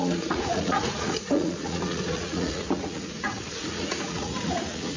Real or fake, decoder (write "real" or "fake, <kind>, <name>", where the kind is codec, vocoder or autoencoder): fake, vocoder, Vocos